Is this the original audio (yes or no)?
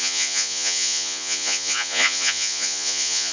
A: no